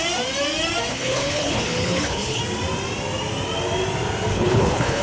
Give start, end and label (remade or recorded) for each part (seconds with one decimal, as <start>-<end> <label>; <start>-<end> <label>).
0.0-0.9 recorded; 0.9-2.4 remade; 2.4-4.3 recorded; 4.3-5.0 remade